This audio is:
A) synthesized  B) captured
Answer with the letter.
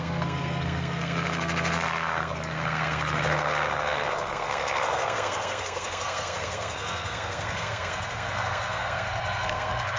A